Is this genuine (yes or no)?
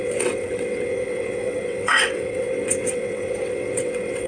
no